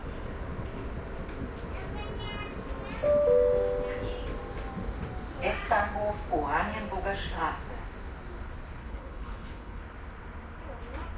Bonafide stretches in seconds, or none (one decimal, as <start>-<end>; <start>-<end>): 0.0-8.8; 9.8-11.2